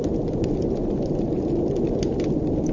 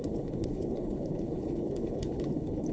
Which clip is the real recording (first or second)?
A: first